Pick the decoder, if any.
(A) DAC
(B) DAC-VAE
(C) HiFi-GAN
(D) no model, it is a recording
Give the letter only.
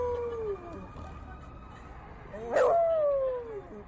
D